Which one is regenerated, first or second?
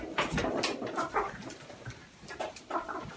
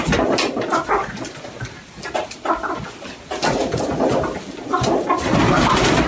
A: first